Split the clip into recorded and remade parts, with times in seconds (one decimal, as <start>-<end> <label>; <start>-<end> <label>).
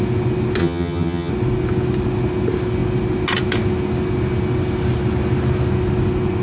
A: 0.0-0.6 recorded; 0.6-1.3 remade; 1.3-6.4 recorded